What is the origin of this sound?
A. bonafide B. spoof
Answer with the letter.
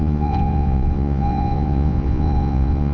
B